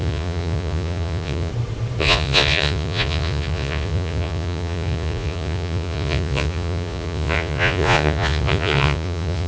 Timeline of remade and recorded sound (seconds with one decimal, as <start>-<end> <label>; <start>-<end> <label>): 0.0-1.5 remade; 1.5-2.0 recorded; 2.0-9.5 remade